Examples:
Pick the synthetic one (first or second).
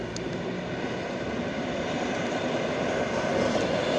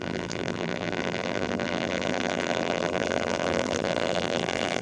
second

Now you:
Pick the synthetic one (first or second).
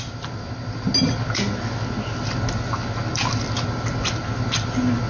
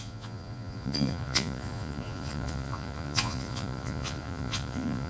second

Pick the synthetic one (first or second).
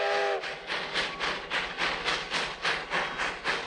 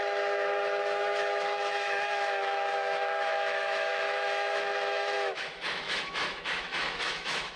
second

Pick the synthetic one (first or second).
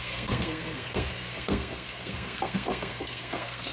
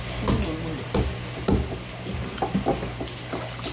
first